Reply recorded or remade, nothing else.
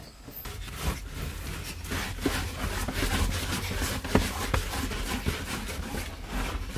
recorded